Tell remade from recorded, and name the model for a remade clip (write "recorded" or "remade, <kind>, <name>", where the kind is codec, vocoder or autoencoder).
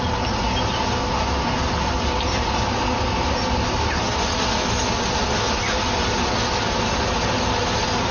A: recorded